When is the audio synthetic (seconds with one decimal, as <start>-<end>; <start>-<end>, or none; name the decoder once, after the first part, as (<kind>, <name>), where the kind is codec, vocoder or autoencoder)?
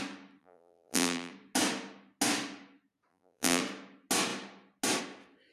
0.4-1.3 (vocoder, BigVGAN v2); 3.1-3.6